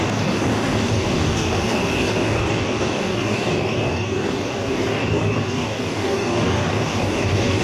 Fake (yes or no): yes